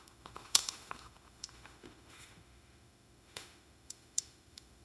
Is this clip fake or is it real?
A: fake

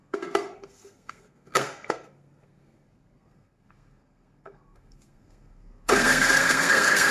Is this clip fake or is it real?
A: fake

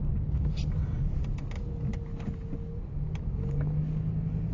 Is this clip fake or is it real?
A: real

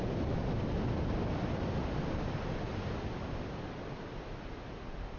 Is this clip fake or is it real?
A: real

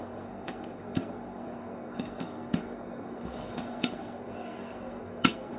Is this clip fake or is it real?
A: fake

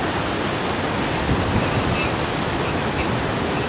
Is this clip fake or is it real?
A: real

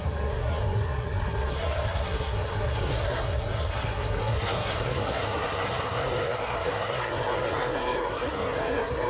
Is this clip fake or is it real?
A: fake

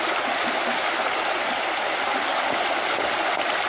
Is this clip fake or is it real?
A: real